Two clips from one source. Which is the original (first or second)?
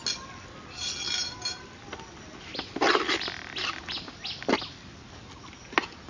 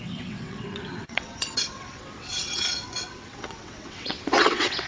first